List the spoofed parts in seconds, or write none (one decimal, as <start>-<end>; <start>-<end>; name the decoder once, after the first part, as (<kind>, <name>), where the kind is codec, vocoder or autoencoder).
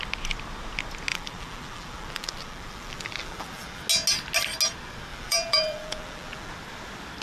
1.1-3.8 (vocoder, BigVGAN v2); 5.1-6.5